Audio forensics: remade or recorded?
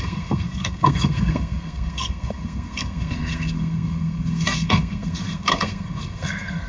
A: remade